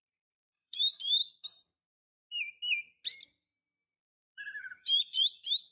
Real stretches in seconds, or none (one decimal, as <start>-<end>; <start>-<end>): 1.2-4.6